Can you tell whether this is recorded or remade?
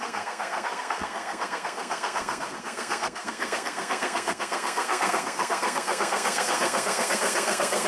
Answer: remade